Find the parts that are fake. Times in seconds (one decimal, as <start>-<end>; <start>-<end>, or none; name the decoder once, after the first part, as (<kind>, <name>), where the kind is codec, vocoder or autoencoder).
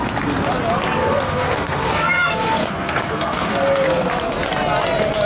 1.0-4.1 (codec, SNAC)